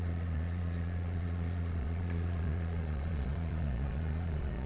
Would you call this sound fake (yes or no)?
yes